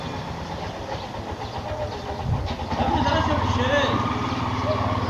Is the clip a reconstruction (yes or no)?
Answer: no